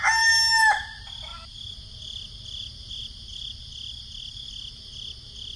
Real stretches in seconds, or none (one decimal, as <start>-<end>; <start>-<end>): 0.0-5.6